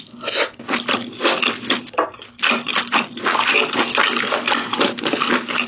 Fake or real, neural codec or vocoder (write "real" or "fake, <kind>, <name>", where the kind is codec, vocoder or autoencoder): real